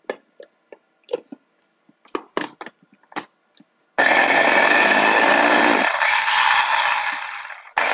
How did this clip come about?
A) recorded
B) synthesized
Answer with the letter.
A